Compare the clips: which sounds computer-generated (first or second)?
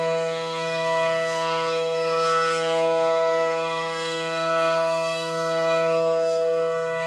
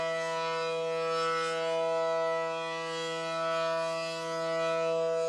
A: first